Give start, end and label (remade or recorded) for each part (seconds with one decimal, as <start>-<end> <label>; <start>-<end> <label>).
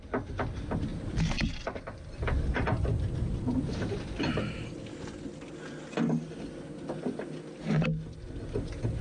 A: 0.0-0.9 recorded; 0.9-5.5 remade; 5.5-9.0 recorded